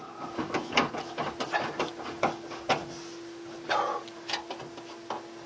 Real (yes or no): yes